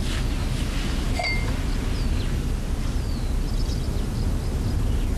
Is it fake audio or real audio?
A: real